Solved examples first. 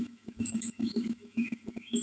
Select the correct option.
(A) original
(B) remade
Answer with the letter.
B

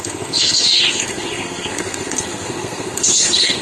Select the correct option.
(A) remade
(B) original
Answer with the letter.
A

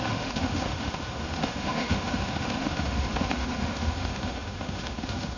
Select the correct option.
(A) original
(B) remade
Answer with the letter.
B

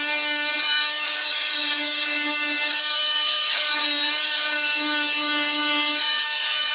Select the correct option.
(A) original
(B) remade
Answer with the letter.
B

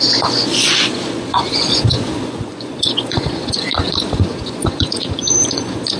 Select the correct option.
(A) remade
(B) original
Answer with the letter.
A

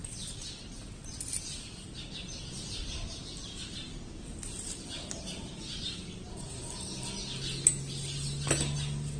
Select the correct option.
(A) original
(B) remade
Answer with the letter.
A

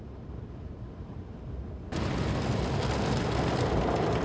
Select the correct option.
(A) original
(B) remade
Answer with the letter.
A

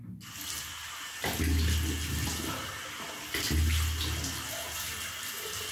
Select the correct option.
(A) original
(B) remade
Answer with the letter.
A